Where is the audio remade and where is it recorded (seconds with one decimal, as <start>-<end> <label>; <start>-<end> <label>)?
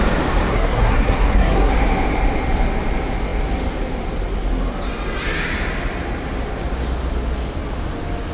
0.0-0.5 recorded; 0.5-1.7 remade; 1.7-8.3 recorded